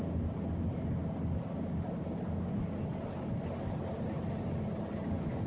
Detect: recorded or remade recorded